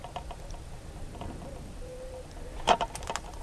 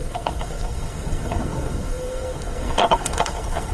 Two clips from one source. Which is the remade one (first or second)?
second